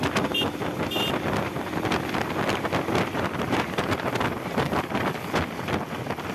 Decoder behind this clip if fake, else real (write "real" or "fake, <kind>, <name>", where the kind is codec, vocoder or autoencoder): real